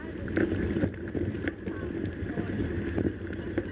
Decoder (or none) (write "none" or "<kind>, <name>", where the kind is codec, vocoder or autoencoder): none